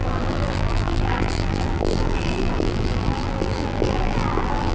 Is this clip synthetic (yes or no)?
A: yes